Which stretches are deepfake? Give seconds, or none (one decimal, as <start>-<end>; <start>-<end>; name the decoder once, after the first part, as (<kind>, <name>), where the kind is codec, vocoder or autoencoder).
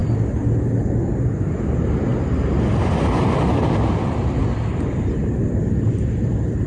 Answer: none